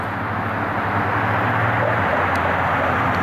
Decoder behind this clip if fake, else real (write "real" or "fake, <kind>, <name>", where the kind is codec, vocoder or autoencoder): real